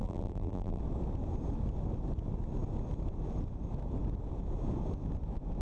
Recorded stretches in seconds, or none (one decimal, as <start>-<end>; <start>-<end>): 0.8-5.6